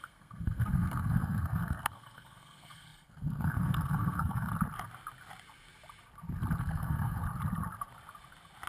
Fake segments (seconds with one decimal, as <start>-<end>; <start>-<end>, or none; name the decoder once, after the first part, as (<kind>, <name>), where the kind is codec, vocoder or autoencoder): 0.0-4.5 (codec, SNAC); 6.6-7.2